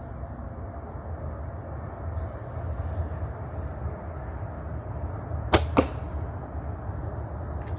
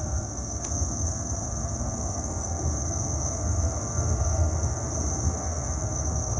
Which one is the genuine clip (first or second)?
first